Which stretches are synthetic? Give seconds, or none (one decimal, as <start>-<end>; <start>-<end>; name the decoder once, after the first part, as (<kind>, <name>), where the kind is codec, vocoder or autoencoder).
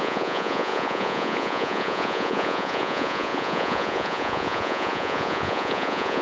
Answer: 0.0-6.2 (vocoder, Vocos)